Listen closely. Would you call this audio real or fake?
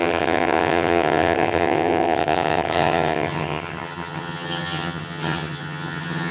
fake